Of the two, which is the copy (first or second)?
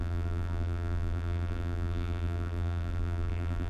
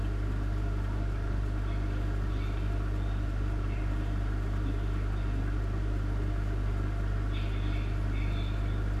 first